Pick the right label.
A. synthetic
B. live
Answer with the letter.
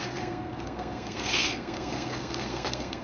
A